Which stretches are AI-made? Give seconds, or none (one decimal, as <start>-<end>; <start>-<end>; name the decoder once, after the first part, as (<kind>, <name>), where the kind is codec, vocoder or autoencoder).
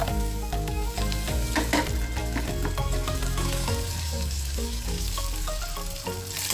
0.0-1.8 (codec, DAC); 2.2-5.6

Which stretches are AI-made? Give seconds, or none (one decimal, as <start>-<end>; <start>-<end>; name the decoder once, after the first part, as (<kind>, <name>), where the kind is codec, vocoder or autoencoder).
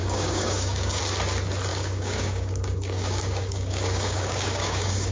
0.0-1.0 (codec, DAC); 1.7-5.1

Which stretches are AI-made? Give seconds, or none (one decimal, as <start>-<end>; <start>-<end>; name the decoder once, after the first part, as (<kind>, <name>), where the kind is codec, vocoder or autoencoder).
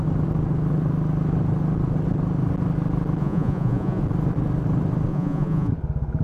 3.2-4.0 (vocoder, Vocos); 5.1-5.7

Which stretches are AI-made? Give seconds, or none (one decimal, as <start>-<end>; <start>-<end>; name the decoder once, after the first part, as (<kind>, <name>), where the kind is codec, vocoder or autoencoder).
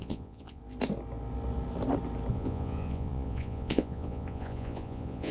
0.0-0.6 (vocoder, Vocos); 2.3-5.3